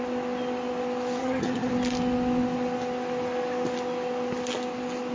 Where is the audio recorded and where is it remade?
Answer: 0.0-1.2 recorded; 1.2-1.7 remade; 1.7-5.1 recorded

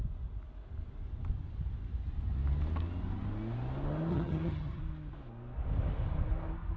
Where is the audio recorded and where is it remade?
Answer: 0.0-4.1 recorded; 4.1-4.8 remade; 4.8-6.8 recorded

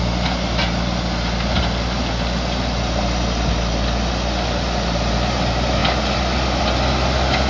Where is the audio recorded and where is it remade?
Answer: 0.0-7.5 recorded

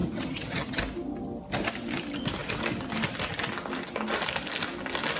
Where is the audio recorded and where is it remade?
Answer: 0.0-0.8 remade; 0.8-5.2 recorded